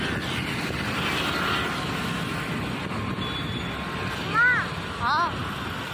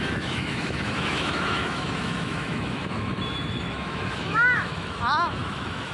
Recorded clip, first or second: first